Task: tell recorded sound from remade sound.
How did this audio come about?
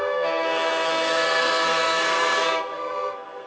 remade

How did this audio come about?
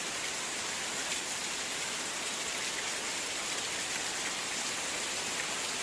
recorded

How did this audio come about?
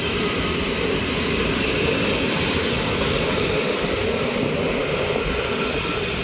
recorded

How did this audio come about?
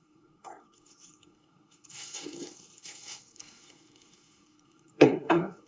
remade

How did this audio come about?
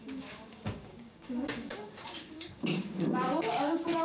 remade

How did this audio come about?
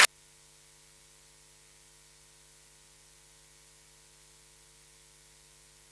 recorded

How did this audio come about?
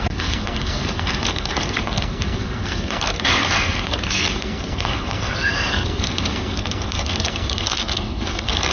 remade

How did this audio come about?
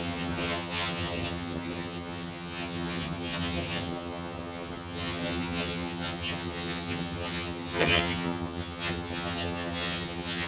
remade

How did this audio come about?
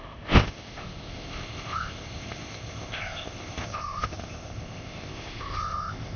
remade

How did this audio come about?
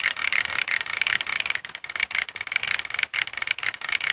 recorded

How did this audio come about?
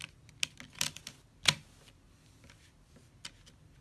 recorded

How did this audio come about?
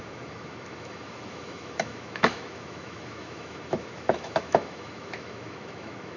remade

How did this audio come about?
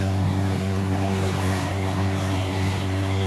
remade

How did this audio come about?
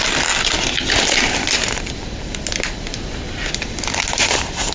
recorded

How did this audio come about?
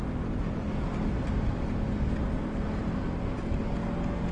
recorded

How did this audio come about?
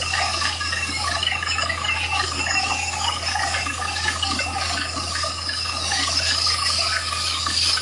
remade